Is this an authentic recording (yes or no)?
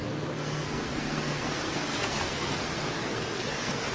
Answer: no